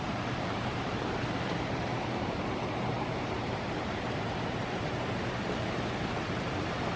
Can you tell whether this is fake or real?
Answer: fake